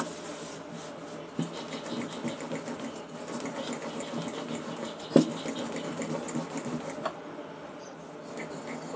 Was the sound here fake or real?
real